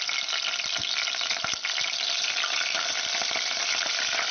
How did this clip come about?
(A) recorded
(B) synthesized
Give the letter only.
A